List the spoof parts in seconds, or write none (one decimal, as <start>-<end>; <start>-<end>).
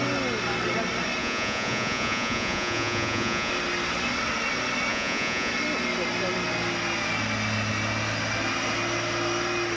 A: 1.2-3.5; 4.9-5.5